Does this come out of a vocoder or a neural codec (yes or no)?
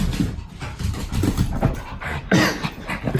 no